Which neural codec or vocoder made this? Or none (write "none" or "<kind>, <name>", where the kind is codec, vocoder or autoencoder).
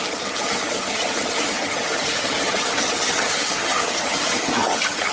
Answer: vocoder, HiFi-GAN